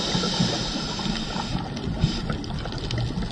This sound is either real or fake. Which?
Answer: real